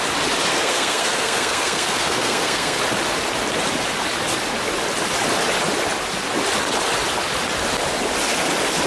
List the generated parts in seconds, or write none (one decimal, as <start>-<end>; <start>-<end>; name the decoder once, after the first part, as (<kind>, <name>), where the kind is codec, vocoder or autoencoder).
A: 0.5-2.8 (codec, SNAC)